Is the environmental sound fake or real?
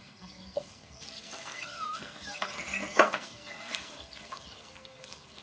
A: fake